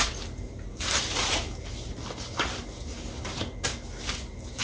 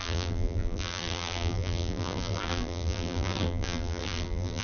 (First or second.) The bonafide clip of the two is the first